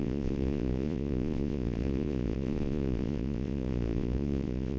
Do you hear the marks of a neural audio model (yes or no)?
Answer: yes